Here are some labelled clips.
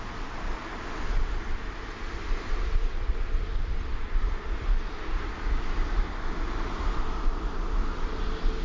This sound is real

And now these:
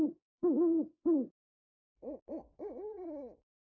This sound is fake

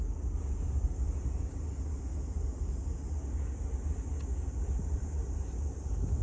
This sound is real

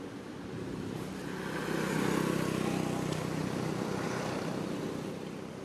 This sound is real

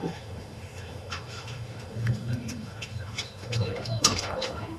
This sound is fake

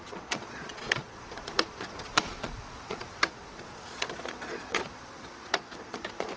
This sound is fake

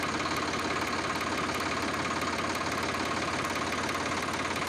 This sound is real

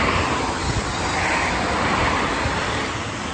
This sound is real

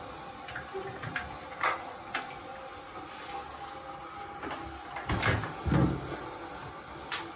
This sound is real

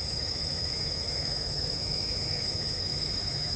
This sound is fake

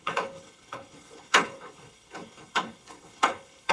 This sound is fake